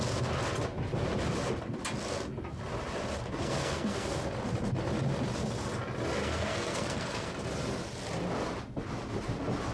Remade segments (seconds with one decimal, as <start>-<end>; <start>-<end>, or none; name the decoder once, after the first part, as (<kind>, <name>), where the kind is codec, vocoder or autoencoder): 3.4-4.2 (codec, SNAC); 6.2-7.3